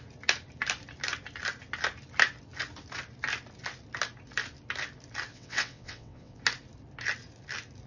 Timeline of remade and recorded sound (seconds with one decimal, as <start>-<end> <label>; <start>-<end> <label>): 0.0-5.3 recorded; 5.3-6.4 remade; 6.4-7.9 recorded